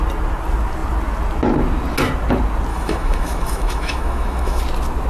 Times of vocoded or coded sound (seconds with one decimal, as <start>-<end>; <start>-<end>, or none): 2.7-4.6